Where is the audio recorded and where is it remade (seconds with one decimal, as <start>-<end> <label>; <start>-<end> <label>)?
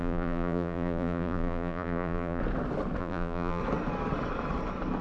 0.0-2.4 remade; 2.4-3.0 recorded; 3.0-3.6 remade; 3.6-5.0 recorded